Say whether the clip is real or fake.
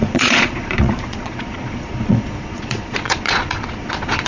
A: fake